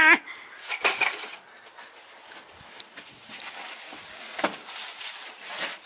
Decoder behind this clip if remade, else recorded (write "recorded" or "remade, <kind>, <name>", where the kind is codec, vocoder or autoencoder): recorded